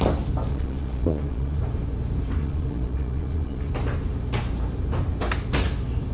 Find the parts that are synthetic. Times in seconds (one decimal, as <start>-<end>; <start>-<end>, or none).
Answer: 0.5-1.6; 2.4-3.7